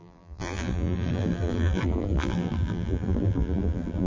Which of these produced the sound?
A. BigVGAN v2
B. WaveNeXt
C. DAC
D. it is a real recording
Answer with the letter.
A